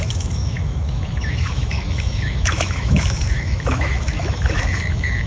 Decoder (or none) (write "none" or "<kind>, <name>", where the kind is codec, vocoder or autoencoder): autoencoder, DAC-VAE